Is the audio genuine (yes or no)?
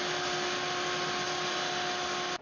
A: yes